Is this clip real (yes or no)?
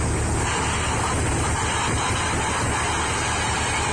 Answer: yes